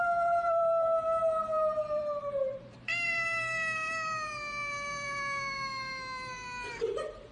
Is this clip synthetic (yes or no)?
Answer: yes